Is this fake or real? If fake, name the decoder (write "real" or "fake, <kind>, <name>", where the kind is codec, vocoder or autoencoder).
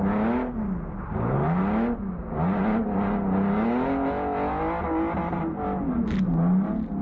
real